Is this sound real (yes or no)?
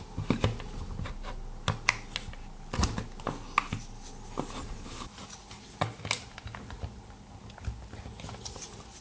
yes